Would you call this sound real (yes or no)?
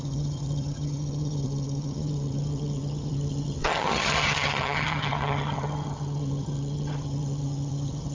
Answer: no